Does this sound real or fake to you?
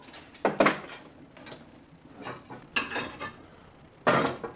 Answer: real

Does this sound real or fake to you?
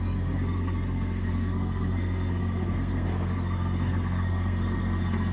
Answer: fake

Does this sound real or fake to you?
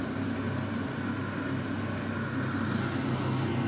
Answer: real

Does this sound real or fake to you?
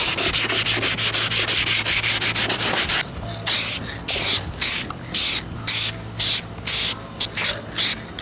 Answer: real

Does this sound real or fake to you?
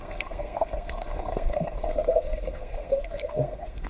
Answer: fake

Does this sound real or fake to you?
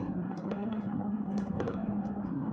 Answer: fake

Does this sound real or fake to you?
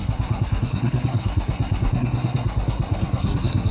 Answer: fake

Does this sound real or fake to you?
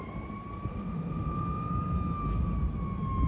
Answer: real